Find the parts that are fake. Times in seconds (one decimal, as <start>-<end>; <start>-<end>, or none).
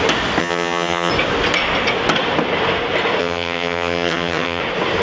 0.4-1.1; 3.2-4.6